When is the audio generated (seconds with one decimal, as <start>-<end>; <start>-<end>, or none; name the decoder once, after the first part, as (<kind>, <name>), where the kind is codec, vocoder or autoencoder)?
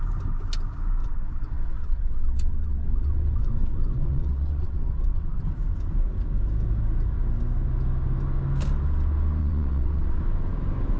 1.0-5.4 (vocoder, WaveNeXt); 9.4-10.2